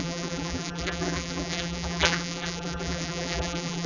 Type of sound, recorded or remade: remade